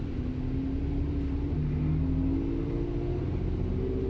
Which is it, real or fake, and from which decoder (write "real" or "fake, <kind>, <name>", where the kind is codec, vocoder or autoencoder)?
real